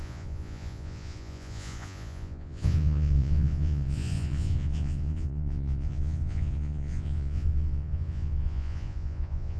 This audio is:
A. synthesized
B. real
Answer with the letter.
A